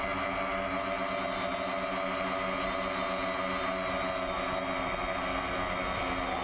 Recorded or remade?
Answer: recorded